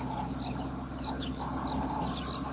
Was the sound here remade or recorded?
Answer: recorded